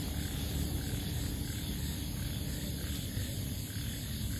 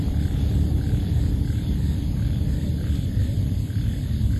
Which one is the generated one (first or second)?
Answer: second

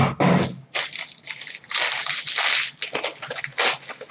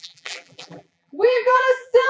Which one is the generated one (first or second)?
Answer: second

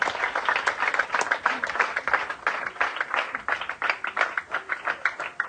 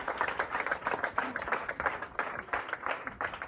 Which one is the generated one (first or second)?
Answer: second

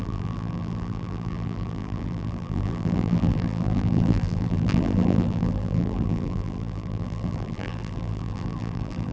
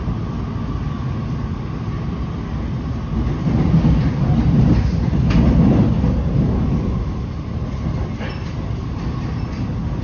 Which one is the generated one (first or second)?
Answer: first